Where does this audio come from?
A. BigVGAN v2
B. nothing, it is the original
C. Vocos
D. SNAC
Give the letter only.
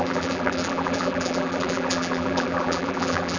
A